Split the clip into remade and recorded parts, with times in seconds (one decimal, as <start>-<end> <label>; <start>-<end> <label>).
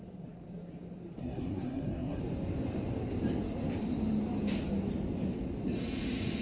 0.0-1.2 recorded; 1.2-2.2 remade; 2.2-6.4 recorded